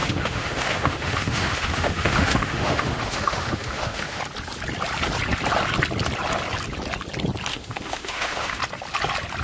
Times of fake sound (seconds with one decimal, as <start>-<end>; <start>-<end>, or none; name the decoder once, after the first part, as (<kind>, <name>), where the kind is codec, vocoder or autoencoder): 0.0-4.2 (autoencoder, DAC-VAE); 7.5-8.6